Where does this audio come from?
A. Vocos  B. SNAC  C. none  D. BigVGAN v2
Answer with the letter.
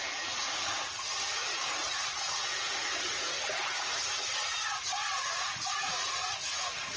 A